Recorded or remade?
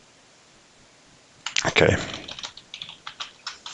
recorded